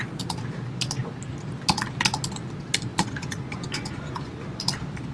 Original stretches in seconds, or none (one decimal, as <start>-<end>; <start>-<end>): 0.0-2.9; 4.6-5.1